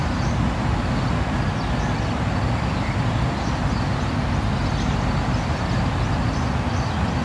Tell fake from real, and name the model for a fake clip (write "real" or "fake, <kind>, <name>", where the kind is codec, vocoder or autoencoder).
real